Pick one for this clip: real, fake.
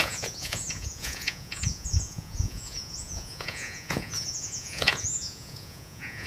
fake